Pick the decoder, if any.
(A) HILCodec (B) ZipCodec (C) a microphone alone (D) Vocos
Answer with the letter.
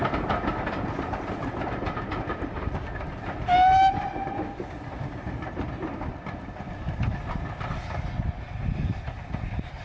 C